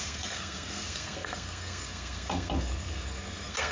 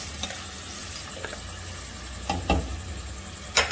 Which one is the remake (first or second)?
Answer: first